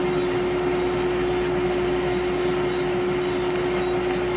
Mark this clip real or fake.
real